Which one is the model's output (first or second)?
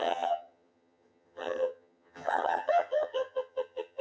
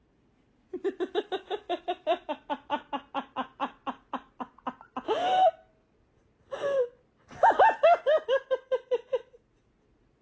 first